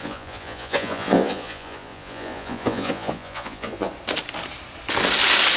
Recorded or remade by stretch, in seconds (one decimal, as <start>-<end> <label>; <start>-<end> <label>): 0.0-3.9 remade; 3.9-5.6 recorded